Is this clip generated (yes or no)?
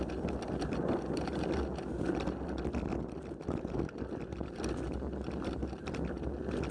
no